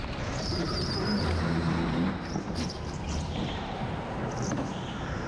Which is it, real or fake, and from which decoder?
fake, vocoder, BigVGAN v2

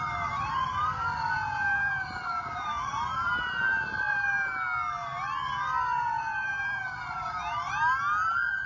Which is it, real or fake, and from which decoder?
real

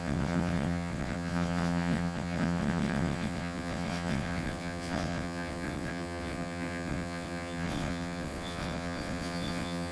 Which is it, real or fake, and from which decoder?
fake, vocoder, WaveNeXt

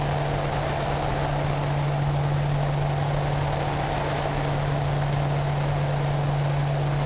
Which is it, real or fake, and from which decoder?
real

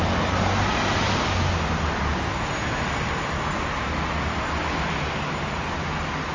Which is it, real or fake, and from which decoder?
real